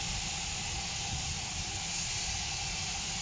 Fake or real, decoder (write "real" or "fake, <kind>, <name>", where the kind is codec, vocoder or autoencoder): real